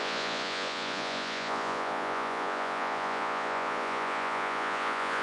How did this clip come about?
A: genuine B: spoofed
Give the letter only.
B